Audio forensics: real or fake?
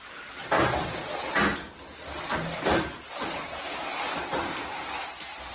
real